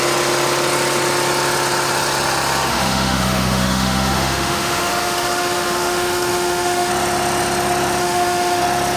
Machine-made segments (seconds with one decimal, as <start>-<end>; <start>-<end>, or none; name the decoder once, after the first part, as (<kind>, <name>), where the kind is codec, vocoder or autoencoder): 2.7-6.9 (autoencoder, DAC-VAE); 8.0-8.6